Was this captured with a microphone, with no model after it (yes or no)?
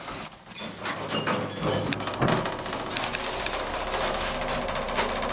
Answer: yes